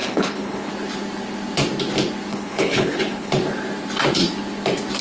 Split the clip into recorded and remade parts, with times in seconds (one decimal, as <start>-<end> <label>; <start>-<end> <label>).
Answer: 0.0-0.7 remade; 0.7-2.3 recorded; 2.3-3.3 remade; 3.3-5.0 recorded